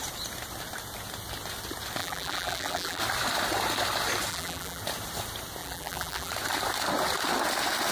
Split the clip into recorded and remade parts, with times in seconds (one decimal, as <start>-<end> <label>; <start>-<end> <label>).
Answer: 0.0-2.0 recorded; 2.0-3.0 remade; 3.0-4.3 recorded; 4.3-4.8 remade; 4.8-5.6 recorded; 5.6-6.3 remade; 6.3-7.9 recorded